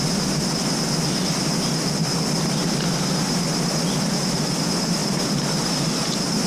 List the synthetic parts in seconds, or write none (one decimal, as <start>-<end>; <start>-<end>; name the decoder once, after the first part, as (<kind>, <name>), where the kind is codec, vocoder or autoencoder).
5.0-5.7 (vocoder, BigVGAN v2)